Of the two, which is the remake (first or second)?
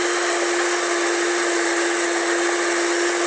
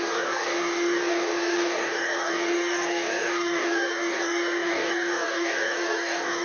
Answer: second